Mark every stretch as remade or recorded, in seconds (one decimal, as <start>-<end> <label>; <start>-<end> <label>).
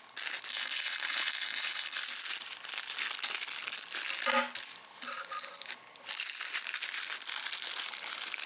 0.0-0.5 recorded; 0.5-2.0 remade; 2.0-8.5 recorded